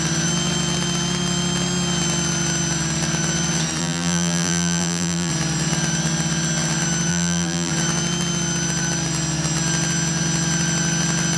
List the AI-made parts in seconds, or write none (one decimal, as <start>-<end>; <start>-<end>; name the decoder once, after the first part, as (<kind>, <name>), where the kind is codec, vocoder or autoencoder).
3.8-5.3 (vocoder, BigVGAN v2); 7.1-7.7

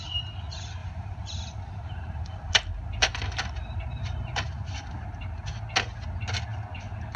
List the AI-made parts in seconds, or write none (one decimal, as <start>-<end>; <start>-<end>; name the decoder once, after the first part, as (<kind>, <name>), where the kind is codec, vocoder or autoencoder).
0.8-5.1 (vocoder, BigVGAN v2)